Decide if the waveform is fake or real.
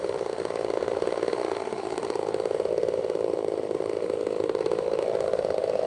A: fake